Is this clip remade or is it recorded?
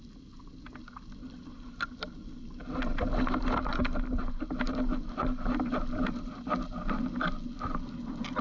recorded